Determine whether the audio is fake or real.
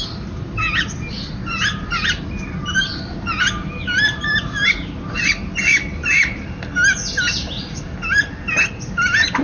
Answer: real